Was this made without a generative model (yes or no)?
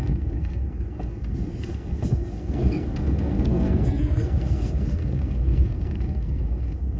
no